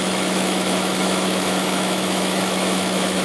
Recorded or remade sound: remade